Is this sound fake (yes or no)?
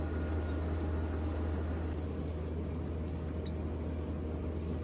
no